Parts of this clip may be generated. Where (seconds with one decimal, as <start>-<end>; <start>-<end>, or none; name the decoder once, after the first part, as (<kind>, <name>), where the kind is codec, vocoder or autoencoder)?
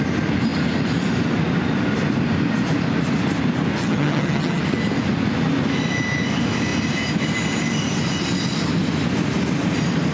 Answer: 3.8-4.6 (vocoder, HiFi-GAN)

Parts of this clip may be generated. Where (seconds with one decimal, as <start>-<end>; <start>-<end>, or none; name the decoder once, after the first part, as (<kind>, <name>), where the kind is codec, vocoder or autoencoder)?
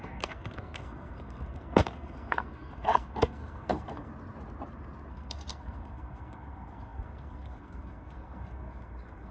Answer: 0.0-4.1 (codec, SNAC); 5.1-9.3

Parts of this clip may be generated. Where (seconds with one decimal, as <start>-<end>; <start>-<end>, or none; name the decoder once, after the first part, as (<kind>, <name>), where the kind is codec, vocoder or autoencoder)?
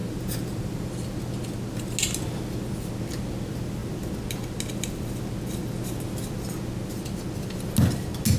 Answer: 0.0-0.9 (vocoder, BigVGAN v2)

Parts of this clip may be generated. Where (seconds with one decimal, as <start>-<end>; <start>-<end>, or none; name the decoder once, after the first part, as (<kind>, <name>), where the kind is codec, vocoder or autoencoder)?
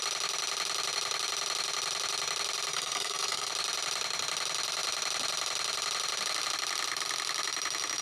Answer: 2.7-3.5 (codec, SNAC)